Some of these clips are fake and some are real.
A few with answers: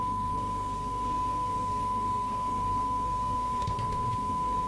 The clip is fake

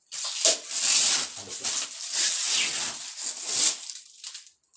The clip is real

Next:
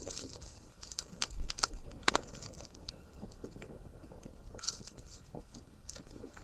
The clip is fake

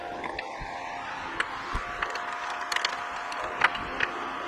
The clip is real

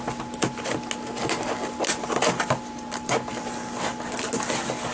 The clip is real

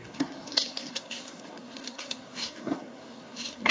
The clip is fake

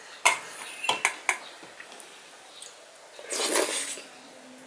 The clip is real